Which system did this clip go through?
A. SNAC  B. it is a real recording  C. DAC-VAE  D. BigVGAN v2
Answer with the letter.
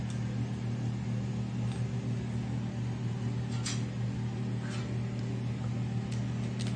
B